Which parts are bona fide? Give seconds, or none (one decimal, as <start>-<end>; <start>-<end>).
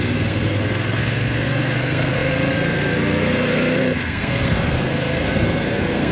none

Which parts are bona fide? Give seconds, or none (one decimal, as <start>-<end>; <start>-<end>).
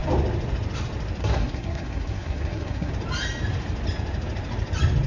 0.0-1.2; 2.9-5.1